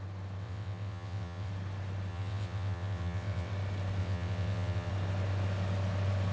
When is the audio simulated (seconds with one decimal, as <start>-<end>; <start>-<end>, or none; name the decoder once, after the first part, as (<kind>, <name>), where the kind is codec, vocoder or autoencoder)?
0.4-1.5 (vocoder, WaveNeXt); 2.1-3.5; 4.0-4.9